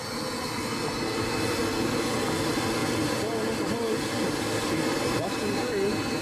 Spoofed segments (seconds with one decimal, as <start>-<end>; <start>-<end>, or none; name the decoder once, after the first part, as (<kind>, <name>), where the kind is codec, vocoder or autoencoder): none